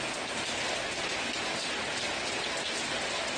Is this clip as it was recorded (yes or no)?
yes